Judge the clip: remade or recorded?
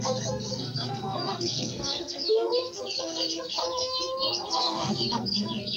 remade